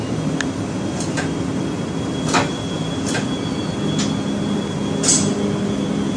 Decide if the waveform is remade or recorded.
recorded